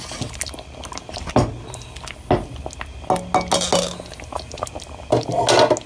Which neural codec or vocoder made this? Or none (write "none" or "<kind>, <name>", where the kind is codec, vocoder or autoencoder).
none